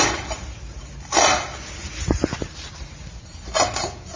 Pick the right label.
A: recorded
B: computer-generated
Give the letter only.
A